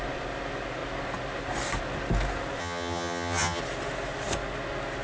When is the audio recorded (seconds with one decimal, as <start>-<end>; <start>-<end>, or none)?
0.0-2.6; 3.6-5.0